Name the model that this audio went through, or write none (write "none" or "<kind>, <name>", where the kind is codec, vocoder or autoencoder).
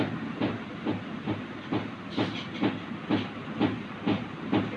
none